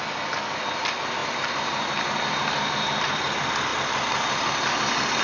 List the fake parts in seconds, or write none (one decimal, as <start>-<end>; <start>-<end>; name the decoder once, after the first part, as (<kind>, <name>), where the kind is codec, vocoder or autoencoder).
none